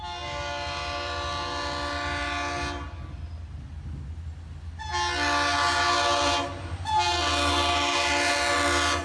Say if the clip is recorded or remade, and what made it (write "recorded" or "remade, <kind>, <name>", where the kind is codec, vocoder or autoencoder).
recorded